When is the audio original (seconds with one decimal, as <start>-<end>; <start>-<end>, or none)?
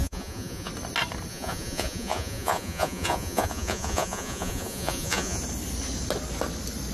0.7-1.3; 5.4-6.9